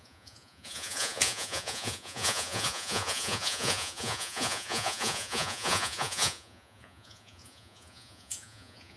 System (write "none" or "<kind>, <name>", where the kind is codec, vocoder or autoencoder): vocoder, Vocos